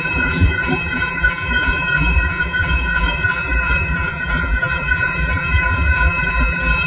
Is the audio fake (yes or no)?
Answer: yes